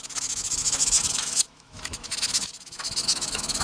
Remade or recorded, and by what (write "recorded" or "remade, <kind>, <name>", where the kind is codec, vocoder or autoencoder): remade, autoencoder, DAC-VAE